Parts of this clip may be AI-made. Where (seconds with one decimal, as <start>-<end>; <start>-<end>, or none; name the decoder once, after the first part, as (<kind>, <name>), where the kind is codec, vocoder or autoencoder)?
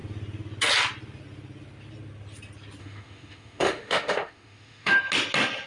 2.8-4.9 (autoencoder, DAC-VAE)